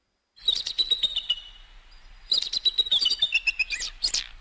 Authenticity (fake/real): real